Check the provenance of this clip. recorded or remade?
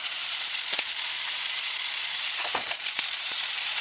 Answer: remade